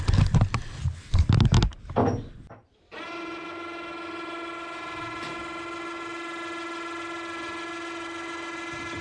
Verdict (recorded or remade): recorded